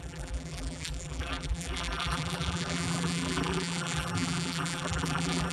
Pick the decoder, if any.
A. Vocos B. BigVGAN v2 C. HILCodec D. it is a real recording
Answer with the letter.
B